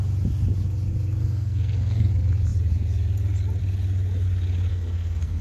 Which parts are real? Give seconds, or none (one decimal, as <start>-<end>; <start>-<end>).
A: 0.0-1.2; 2.1-4.7